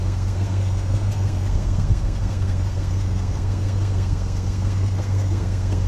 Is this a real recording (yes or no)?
no